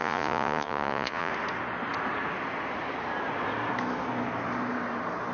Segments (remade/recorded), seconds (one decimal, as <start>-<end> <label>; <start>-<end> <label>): 0.0-1.3 remade; 1.3-5.3 recorded